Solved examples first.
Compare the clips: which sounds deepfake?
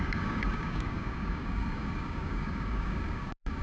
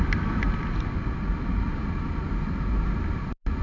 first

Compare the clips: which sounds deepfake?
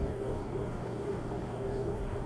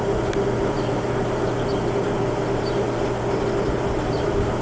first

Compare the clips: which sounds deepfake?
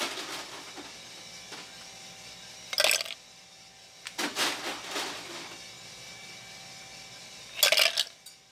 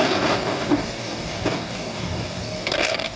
second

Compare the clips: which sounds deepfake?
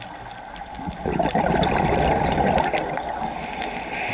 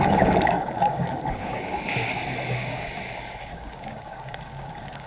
second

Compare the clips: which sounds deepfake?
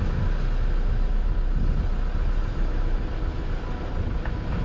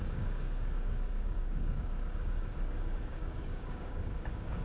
second